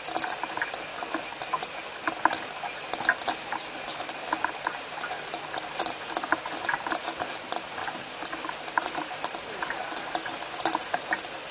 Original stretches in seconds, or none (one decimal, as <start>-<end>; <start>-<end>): 0.0-11.5